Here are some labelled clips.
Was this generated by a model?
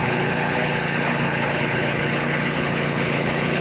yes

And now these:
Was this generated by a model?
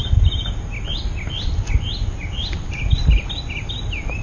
no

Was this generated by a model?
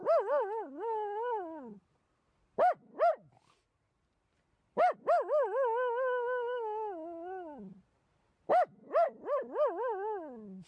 no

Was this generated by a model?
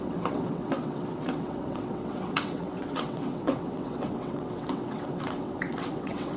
yes